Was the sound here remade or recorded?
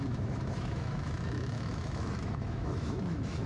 remade